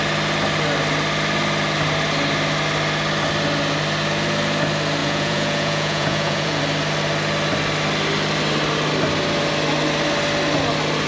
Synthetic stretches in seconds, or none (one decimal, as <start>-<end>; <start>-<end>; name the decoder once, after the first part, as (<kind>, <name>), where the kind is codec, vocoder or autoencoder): 5.0-6.6 (vocoder, Vocos)